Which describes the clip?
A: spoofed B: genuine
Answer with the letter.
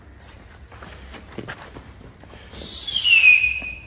B